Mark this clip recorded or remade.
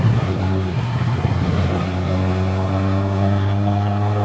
remade